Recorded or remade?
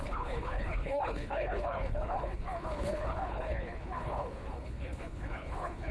remade